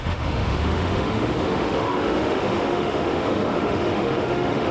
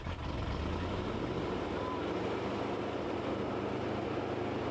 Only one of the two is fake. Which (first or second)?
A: first